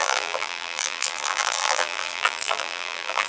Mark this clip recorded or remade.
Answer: remade